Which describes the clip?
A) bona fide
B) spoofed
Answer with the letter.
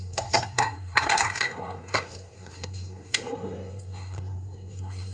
B